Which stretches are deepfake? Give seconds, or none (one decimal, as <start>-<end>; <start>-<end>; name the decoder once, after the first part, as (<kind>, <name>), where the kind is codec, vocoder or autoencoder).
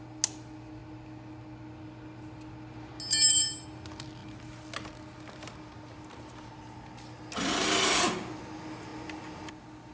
none